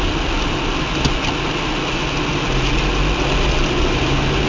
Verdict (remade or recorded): recorded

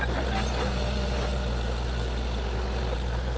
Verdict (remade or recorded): recorded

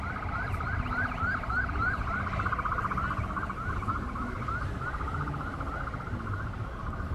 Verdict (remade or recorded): recorded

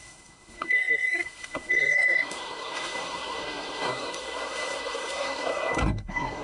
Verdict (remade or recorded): remade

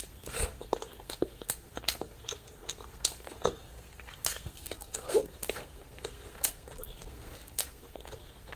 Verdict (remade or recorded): remade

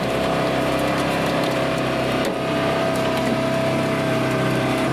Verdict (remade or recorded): recorded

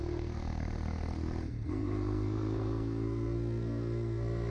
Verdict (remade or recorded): remade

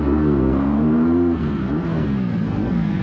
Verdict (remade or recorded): remade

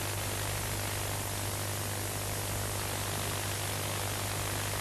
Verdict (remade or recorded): recorded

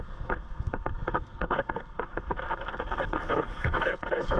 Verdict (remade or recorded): remade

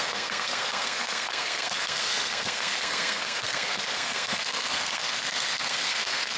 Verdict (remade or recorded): remade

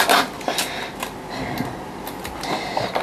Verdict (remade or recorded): recorded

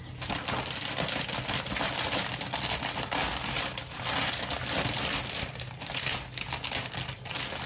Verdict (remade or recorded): recorded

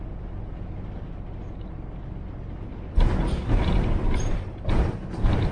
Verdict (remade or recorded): recorded